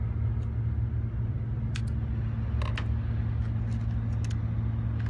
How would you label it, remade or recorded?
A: recorded